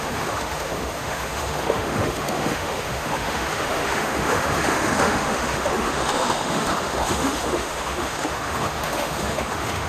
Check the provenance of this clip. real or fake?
fake